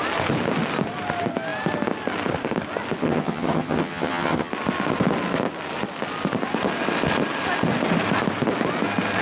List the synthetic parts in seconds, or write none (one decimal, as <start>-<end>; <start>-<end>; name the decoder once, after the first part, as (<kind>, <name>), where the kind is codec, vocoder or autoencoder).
3.0-4.5 (vocoder, HiFi-GAN)

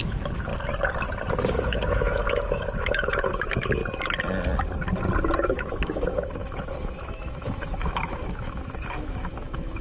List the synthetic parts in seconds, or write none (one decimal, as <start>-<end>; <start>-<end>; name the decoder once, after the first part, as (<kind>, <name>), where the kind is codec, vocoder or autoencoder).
0.0-0.5 (autoencoder, DAC-VAE); 1.5-3.8; 5.5-9.8

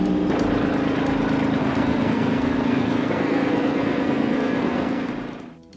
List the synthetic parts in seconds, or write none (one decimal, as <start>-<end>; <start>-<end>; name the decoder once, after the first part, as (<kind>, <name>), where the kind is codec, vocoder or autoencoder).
1.6-5.1 (codec, SNAC)

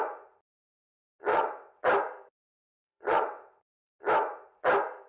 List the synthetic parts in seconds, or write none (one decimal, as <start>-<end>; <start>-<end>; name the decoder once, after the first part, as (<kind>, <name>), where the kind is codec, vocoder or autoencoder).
1.3-1.8 (vocoder, WaveNeXt); 2.3-3.9

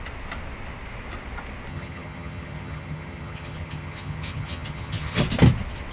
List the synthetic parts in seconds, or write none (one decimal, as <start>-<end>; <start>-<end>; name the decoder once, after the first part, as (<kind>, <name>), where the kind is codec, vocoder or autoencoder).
1.7-5.2 (vocoder, HiFi-GAN)

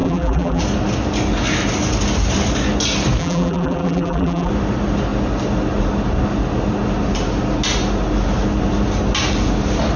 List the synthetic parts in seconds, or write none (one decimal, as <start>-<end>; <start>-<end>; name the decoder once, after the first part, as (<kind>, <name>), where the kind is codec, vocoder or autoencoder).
0.0-0.6 (vocoder, BigVGAN v2); 3.2-4.5

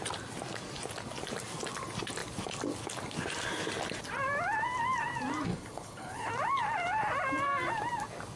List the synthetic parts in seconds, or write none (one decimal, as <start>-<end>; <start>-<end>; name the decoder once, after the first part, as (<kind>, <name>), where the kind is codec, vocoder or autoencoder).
5.5-6.3 (codec, HILCodec)

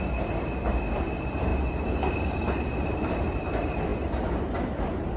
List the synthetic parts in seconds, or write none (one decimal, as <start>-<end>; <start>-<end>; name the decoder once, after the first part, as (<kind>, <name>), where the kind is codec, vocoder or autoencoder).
none